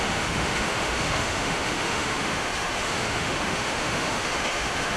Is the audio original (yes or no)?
no